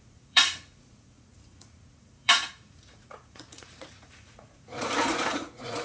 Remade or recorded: remade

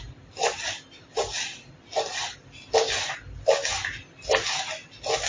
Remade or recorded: recorded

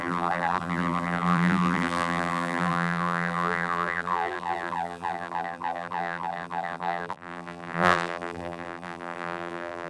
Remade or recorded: remade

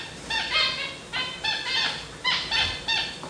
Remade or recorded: recorded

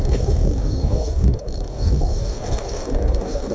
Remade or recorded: remade